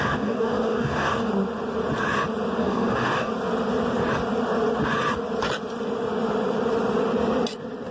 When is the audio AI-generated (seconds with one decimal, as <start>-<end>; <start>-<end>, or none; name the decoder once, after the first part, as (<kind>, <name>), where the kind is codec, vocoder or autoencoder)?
0.0-1.3 (codec, DAC); 2.6-3.3